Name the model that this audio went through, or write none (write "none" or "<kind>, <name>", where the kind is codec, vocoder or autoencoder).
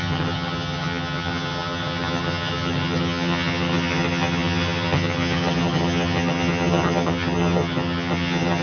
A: vocoder, HiFi-GAN